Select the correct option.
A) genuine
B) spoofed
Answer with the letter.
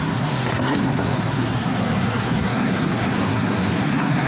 B